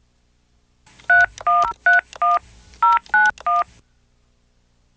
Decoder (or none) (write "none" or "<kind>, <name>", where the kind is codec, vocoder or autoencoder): none